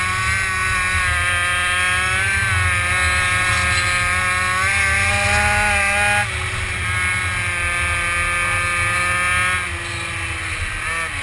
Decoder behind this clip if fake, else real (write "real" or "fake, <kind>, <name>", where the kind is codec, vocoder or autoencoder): real